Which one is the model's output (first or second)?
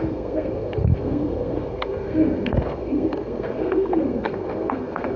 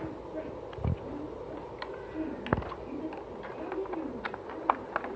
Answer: first